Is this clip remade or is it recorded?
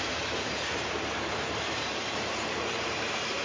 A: remade